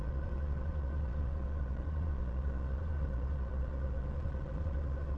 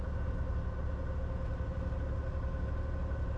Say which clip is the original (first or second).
second